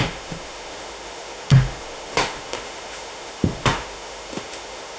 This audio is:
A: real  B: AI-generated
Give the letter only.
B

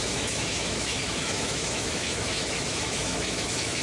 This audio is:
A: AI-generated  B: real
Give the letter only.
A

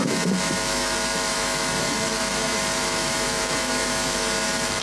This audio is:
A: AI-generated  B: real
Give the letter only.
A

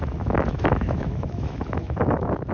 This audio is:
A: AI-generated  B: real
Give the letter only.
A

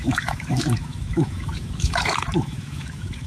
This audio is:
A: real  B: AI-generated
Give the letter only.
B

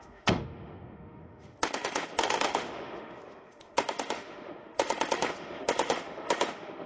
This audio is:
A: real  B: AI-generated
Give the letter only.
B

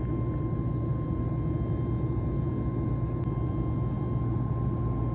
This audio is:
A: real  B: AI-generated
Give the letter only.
A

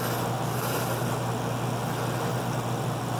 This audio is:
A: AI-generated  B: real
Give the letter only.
B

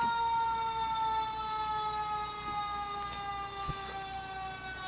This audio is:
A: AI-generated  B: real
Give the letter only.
B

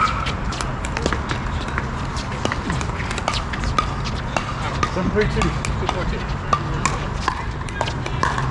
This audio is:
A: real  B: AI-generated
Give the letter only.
A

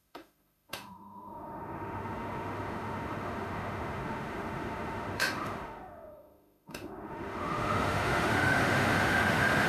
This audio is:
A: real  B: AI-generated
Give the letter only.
B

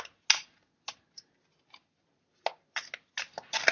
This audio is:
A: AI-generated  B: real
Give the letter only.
B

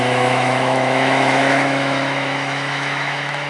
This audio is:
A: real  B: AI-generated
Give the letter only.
B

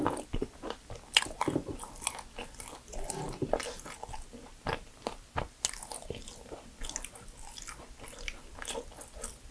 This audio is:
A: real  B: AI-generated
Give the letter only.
A